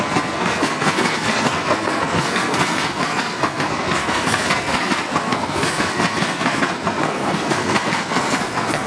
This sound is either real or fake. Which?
fake